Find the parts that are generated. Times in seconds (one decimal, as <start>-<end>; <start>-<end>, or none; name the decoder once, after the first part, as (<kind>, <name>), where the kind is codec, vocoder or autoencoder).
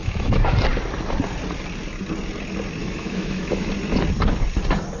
0.0-0.5 (autoencoder, DAC-VAE); 2.8-3.7